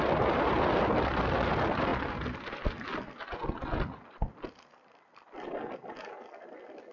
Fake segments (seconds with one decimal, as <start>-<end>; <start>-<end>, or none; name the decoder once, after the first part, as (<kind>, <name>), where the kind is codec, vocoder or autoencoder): none